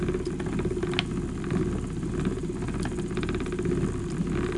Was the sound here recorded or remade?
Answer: recorded